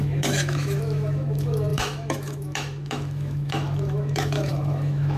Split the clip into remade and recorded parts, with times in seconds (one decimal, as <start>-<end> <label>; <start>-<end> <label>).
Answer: 0.0-5.2 remade